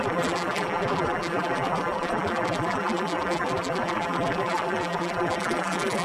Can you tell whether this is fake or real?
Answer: fake